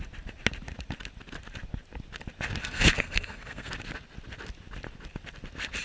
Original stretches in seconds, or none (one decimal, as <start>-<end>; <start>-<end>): 0.0-2.6; 3.7-5.8